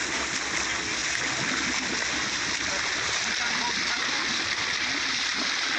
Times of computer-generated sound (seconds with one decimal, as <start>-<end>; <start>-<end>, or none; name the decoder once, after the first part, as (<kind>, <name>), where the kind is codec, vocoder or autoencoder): none